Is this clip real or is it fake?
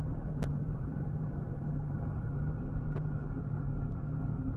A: fake